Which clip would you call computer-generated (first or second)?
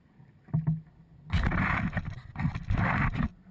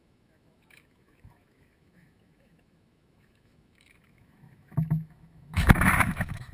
second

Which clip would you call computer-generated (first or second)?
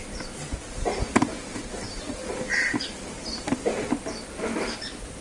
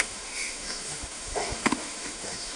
second